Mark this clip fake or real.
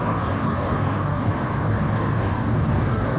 fake